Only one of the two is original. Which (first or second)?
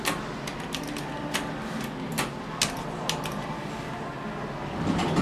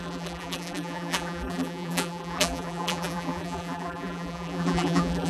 first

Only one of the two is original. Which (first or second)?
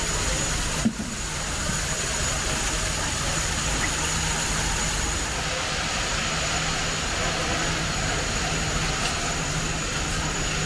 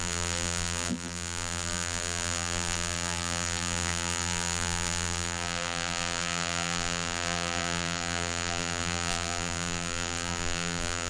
first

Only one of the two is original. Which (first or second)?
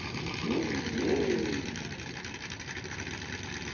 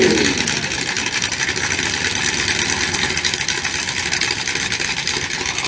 second